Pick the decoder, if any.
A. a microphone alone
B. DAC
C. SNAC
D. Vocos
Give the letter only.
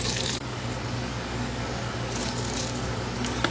B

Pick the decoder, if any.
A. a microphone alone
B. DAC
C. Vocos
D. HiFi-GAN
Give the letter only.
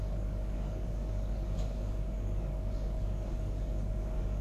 B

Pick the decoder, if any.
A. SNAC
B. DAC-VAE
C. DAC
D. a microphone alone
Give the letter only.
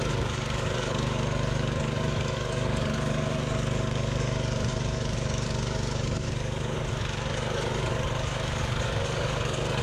C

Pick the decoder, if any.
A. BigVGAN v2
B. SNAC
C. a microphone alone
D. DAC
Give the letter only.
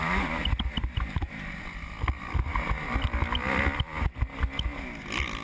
C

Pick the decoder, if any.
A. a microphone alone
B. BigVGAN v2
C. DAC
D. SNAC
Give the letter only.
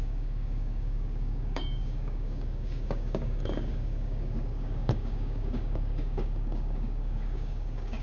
C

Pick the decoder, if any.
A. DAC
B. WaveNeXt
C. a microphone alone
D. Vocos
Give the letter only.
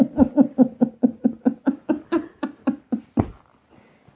C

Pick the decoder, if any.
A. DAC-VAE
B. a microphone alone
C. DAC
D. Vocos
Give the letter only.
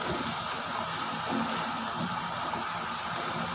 B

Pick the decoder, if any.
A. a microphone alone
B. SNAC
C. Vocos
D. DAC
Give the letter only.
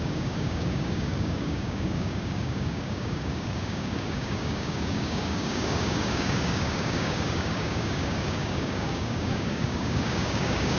D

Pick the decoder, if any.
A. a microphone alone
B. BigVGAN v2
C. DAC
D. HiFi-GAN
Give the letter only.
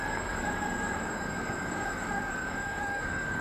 C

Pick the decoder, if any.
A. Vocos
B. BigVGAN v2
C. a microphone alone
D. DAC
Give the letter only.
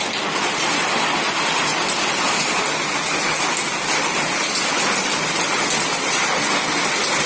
C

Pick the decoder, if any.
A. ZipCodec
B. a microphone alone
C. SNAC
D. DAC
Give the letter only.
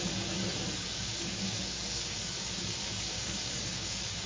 D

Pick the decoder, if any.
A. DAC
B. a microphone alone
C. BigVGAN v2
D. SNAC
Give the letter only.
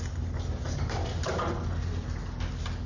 B